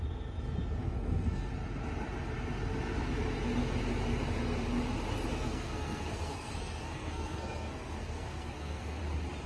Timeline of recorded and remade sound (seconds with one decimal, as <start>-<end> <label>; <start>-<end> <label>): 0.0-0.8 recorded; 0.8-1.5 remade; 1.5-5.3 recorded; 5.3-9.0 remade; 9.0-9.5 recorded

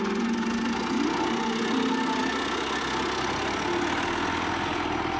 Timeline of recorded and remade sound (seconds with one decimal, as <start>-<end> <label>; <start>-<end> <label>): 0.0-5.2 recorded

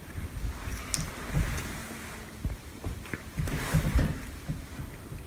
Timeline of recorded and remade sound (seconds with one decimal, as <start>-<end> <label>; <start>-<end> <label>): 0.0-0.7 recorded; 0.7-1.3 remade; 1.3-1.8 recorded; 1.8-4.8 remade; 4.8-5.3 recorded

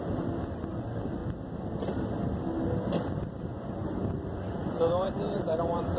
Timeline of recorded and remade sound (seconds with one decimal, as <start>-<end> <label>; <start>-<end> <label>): 0.0-1.2 remade; 1.2-2.8 recorded; 2.8-6.0 remade

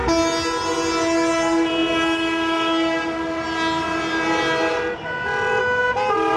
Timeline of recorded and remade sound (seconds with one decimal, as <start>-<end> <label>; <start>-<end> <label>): 0.0-6.4 recorded

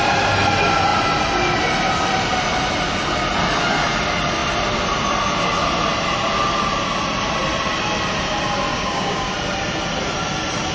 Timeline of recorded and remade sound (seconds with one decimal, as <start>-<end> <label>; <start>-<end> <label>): 0.0-8.7 recorded; 8.7-9.3 remade; 9.3-10.7 recorded

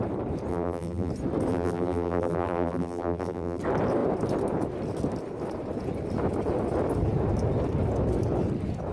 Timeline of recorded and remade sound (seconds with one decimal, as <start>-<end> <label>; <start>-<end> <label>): 0.0-0.5 recorded; 0.5-1.1 remade; 1.1-1.5 recorded; 1.5-3.6 remade; 3.6-8.9 recorded

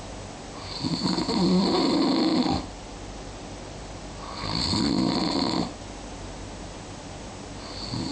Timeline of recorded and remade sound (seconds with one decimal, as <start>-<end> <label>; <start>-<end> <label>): 0.0-2.3 recorded; 2.3-5.8 remade; 5.8-8.1 recorded